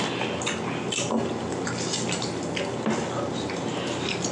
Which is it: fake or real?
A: real